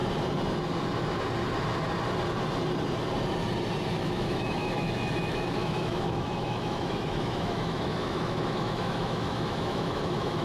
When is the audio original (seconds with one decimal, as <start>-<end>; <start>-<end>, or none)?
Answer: 0.0-3.9